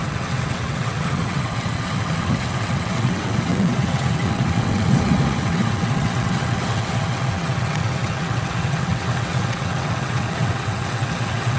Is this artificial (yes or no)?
yes